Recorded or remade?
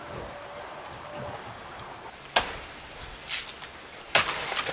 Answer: recorded